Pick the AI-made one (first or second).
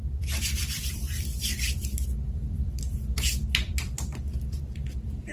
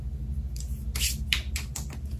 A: first